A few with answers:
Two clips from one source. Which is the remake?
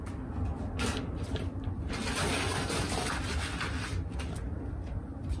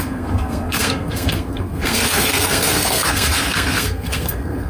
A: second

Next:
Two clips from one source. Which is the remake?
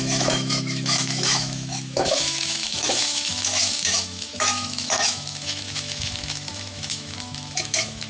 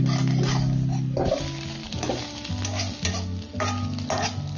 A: first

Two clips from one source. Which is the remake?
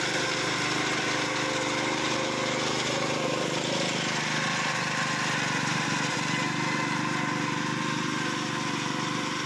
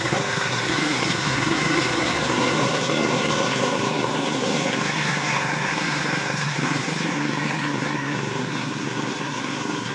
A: second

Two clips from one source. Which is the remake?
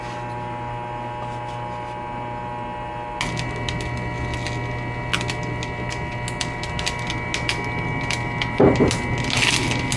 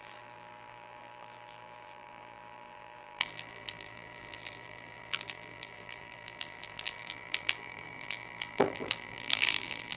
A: second